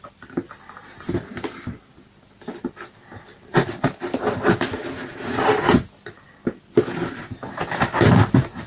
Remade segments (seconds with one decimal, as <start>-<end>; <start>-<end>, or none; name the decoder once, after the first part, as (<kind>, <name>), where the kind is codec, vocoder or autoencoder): none